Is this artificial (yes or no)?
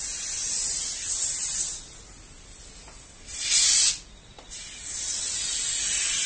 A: no